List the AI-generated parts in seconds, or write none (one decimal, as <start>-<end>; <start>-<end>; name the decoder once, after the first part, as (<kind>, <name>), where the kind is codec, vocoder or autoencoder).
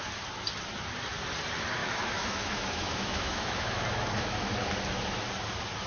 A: 1.8-4.5 (autoencoder, DAC-VAE)